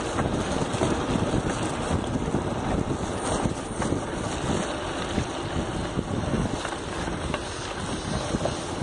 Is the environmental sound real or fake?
real